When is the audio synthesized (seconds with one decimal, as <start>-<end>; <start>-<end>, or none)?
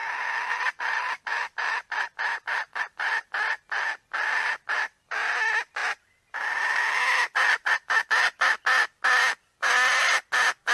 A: none